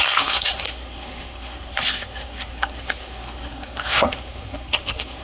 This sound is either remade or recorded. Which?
remade